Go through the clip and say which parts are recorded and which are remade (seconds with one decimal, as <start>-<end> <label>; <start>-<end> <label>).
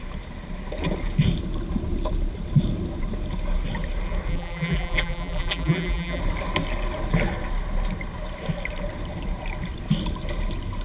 0.0-4.3 recorded; 4.3-6.2 remade; 6.2-10.8 recorded